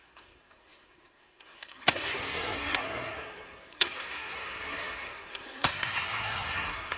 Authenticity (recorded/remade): remade